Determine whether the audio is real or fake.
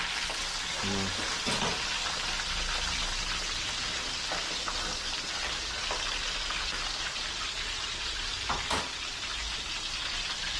real